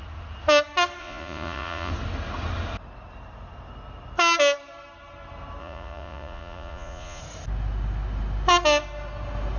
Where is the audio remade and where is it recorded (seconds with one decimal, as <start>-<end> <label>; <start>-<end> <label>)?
0.0-1.0 recorded; 1.0-1.9 remade; 1.9-5.6 recorded; 5.6-7.2 remade; 7.2-9.6 recorded